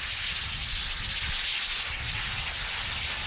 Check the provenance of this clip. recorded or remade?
recorded